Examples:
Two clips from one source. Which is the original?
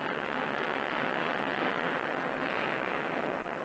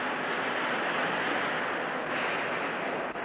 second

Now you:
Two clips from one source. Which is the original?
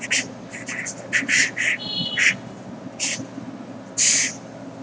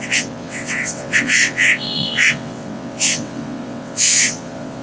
first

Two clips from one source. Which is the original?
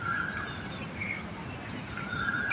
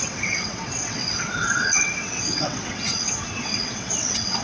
first